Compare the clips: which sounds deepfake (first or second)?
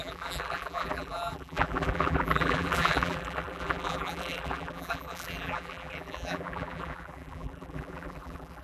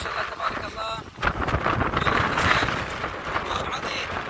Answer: first